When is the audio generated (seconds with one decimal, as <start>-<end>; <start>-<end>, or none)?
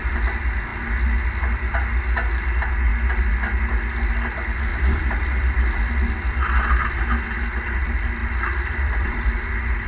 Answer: 4.7-6.3; 8.2-9.5